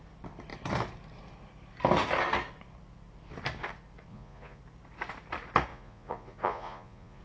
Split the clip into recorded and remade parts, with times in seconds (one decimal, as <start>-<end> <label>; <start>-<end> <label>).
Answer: 0.0-4.1 recorded; 4.1-4.6 remade; 4.6-5.7 recorded; 5.7-7.2 remade